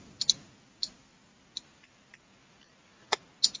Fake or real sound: real